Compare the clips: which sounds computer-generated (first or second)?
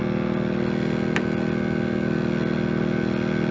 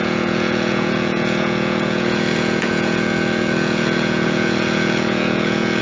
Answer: second